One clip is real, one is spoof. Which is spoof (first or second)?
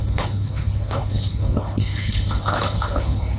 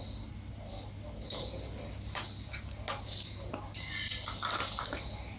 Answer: first